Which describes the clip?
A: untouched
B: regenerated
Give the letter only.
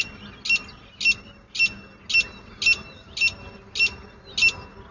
A